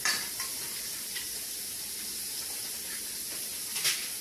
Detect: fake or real fake